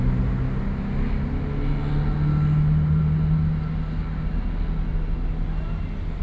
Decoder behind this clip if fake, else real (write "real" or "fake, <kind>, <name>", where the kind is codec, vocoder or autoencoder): real